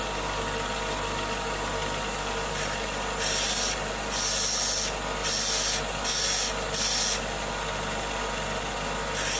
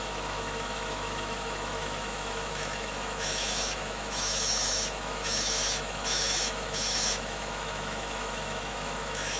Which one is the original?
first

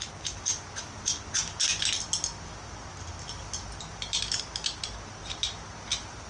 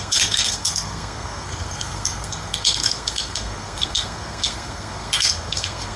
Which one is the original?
first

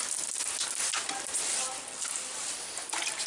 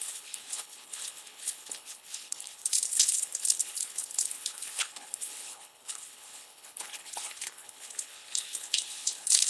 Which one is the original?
first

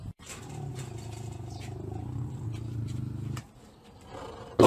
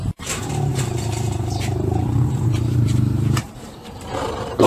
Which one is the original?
first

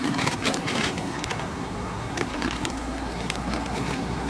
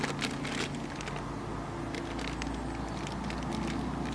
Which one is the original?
second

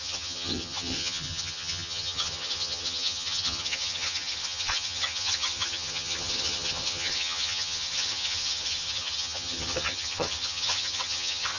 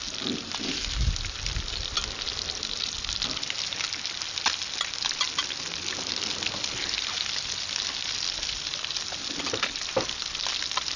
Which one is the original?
second